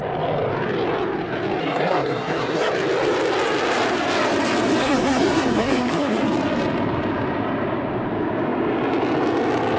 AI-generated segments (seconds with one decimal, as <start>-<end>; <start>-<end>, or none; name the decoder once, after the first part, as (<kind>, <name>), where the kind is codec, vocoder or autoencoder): 1.6-2.7 (codec, SNAC); 4.8-6.2

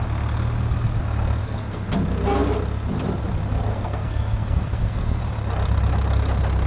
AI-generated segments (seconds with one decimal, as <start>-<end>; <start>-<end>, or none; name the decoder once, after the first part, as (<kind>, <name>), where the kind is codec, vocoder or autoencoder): 1.4-1.9 (codec, SNAC); 3.7-5.2

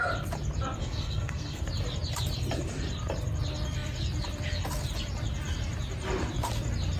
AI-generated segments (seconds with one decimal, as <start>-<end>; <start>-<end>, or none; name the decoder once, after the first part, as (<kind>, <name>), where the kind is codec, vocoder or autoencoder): 0.8-1.6 (codec, SNAC)

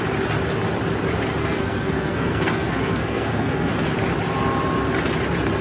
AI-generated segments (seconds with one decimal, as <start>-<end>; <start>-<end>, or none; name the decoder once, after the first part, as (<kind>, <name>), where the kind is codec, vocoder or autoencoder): 1.4-3.7 (codec, SNAC)

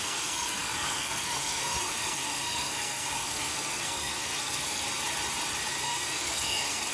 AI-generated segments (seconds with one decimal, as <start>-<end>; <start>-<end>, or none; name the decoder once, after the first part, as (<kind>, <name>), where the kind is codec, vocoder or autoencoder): 0.0-4.8 (codec, SNAC); 5.8-6.9